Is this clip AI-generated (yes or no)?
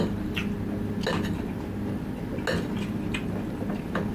no